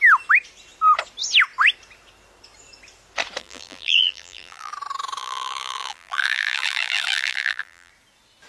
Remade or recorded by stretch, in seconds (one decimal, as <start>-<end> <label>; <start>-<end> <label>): 0.0-3.4 recorded; 3.4-4.7 remade; 4.7-5.2 recorded; 5.2-7.9 remade; 7.9-8.5 recorded